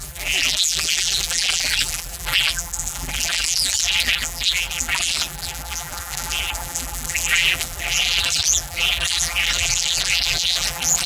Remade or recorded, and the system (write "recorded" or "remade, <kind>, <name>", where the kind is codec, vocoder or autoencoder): remade, vocoder, BigVGAN v2